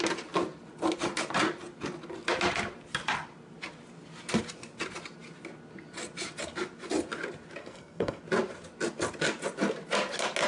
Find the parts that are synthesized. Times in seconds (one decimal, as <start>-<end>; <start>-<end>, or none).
7.6-8.2